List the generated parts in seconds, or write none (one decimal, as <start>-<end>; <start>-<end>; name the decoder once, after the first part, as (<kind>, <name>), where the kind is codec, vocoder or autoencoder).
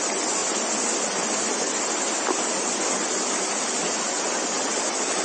none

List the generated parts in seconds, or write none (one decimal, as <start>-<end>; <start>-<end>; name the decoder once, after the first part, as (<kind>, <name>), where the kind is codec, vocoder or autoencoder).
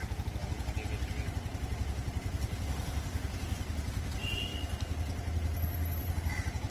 4.5-6.3 (vocoder, BigVGAN v2)